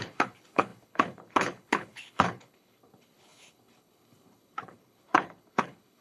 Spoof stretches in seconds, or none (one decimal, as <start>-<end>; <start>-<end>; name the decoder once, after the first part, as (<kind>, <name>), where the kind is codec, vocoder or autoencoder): 0.0-6.0 (codec, HILCodec)